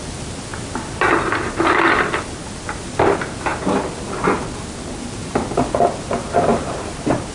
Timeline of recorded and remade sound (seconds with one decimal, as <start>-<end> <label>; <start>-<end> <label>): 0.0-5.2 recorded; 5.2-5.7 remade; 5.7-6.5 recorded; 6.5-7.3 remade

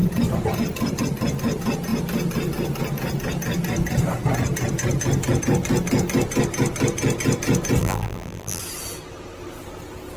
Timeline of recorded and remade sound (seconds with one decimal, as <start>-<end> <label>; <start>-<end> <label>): 0.0-7.8 recorded; 7.8-8.6 remade; 8.6-10.2 recorded

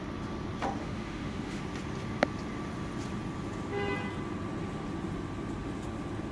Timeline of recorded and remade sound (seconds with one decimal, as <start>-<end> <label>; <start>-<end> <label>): 0.0-0.8 recorded; 0.8-1.6 remade; 1.6-6.3 recorded

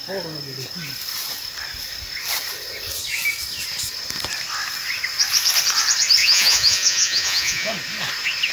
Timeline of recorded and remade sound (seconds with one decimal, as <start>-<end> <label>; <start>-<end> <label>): 0.0-6.2 recorded; 6.2-7.7 remade; 7.7-8.5 recorded